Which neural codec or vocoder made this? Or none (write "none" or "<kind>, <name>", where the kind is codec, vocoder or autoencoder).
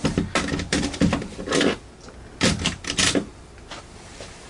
none